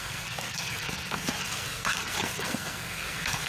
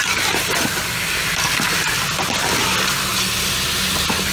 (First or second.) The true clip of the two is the second